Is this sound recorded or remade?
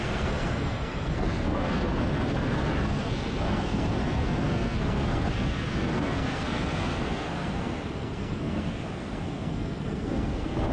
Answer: remade